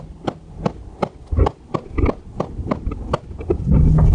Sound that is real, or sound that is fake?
real